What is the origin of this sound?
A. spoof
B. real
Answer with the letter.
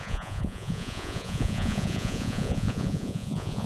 A